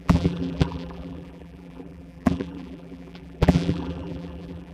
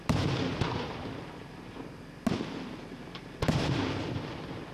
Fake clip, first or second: first